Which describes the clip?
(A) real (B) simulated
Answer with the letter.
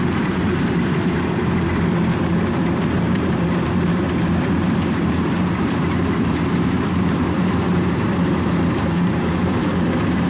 B